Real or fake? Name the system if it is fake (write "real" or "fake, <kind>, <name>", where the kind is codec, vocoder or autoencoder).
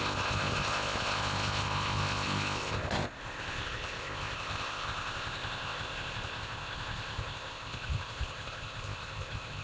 fake, codec, ZipCodec